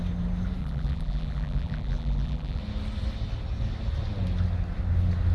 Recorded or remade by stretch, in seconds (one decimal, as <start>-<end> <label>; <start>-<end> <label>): 0.0-0.6 recorded; 0.6-2.6 remade; 2.6-5.3 recorded